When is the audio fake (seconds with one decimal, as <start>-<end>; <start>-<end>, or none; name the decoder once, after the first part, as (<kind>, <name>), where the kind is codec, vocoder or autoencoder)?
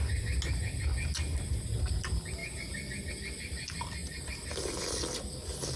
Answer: none